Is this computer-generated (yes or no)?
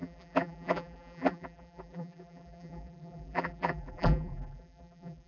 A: yes